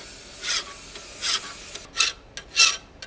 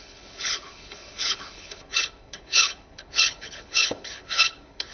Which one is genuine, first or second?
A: first